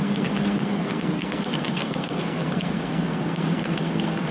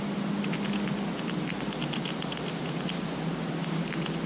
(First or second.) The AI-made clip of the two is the first